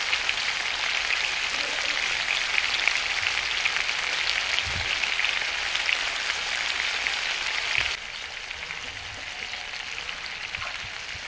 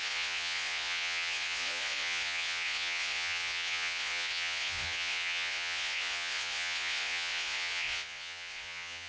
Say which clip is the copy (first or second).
second